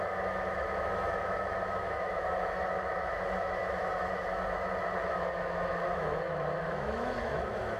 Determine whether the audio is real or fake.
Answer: fake